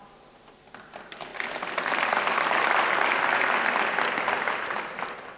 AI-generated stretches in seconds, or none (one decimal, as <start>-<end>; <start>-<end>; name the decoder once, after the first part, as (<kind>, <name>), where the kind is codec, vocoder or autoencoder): none